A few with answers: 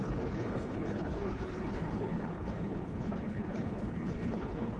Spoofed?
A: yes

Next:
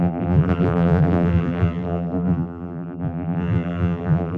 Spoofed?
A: yes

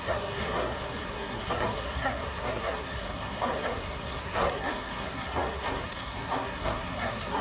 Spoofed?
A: yes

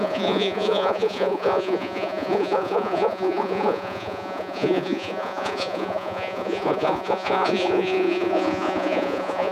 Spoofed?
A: yes